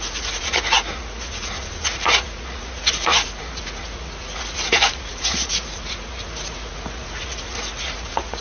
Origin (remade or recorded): remade